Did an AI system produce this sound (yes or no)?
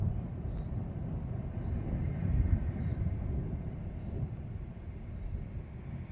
no